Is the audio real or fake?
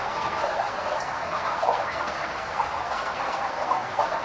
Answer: fake